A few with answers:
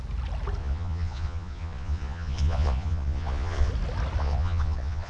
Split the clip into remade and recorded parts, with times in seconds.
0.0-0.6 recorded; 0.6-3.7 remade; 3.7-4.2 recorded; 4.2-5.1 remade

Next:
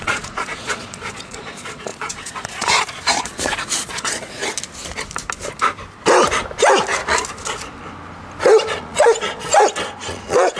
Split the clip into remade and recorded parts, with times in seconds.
0.0-4.4 remade; 4.4-8.8 recorded; 8.8-9.5 remade; 9.5-10.1 recorded; 10.1-10.6 remade

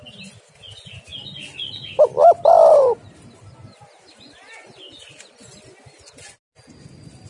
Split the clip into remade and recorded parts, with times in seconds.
0.0-7.3 recorded